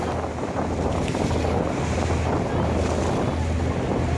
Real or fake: real